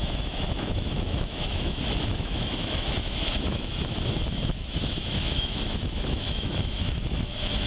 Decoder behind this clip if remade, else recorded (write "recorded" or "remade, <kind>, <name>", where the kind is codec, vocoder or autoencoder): remade, autoencoder, DAC-VAE